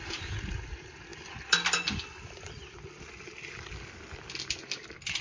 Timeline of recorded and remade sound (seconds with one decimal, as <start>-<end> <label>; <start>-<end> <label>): 0.0-5.2 recorded